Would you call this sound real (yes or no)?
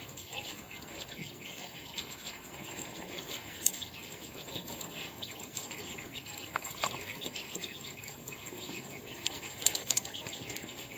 no